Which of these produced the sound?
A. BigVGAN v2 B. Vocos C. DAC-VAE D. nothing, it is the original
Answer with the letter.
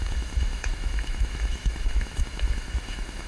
C